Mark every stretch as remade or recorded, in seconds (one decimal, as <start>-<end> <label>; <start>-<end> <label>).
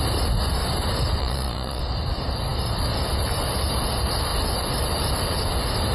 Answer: 0.0-1.2 recorded; 1.2-1.8 remade; 1.8-5.9 recorded